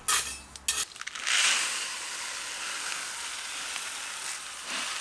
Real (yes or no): yes